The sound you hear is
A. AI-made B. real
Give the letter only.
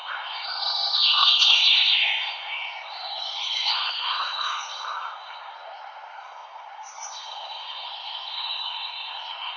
A